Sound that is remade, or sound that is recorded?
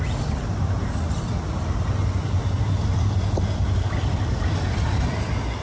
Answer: recorded